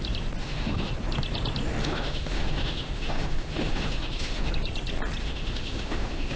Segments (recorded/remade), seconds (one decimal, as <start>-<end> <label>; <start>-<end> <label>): 0.0-0.4 recorded; 0.4-0.9 remade; 0.9-1.8 recorded; 1.8-4.5 remade; 4.5-5.2 recorded; 5.2-6.4 remade